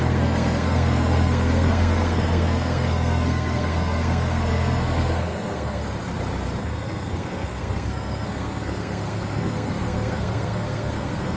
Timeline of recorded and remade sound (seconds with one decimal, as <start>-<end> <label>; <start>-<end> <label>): 0.0-5.8 remade; 5.8-6.6 recorded; 6.6-11.4 remade